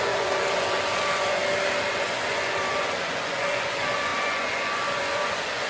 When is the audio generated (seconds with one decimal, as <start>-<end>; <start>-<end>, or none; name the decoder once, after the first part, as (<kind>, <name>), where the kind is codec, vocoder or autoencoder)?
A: 0.0-1.4 (vocoder, Vocos); 1.9-5.7